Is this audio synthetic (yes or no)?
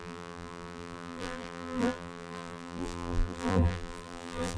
yes